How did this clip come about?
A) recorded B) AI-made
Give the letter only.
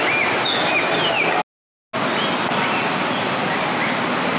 A